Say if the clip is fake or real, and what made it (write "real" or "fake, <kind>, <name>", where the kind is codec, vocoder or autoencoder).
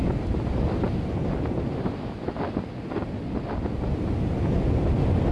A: real